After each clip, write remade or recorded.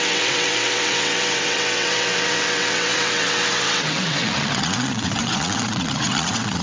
remade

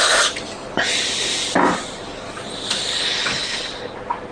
recorded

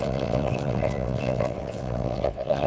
remade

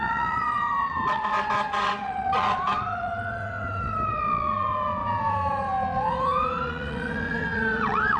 remade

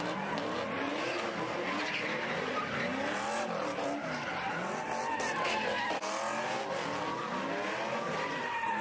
recorded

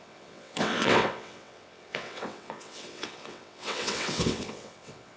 remade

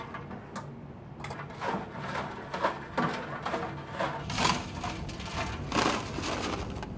recorded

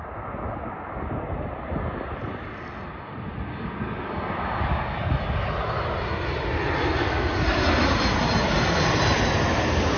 recorded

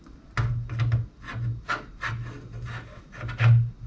recorded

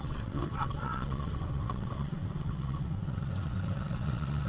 remade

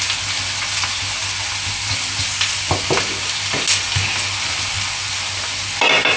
recorded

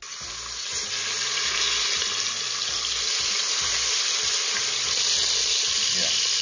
recorded